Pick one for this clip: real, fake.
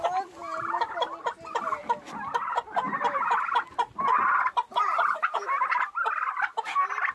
real